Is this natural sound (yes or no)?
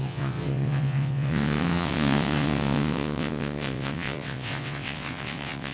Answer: no